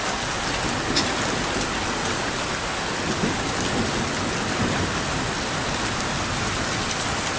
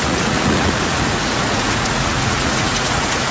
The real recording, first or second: first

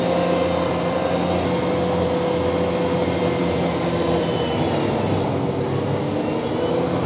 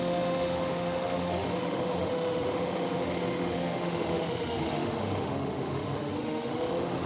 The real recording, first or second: first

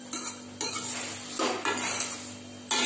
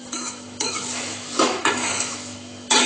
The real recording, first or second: first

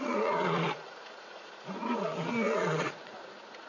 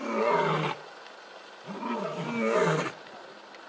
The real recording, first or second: second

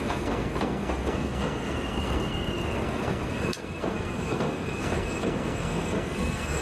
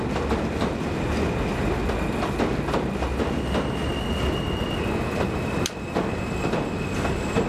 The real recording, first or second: second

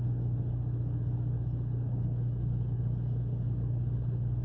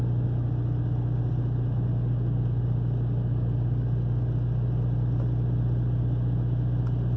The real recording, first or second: second